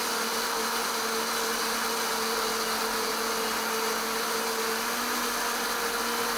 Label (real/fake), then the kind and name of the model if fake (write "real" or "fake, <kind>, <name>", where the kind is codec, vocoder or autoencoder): real